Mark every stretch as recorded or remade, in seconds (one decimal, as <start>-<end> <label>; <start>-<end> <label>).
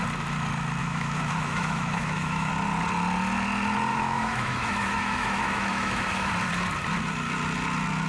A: 0.0-0.8 recorded; 0.8-2.5 remade; 2.5-3.9 recorded; 3.9-6.3 remade; 6.3-8.1 recorded